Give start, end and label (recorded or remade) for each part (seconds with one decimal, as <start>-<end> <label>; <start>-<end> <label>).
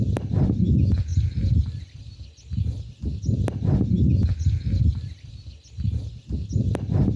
0.0-7.2 recorded